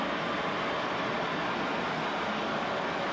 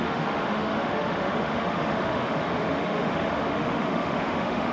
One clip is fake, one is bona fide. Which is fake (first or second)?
second